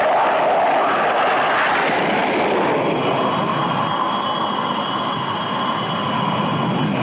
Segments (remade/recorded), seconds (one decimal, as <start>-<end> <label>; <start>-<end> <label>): 0.0-7.0 recorded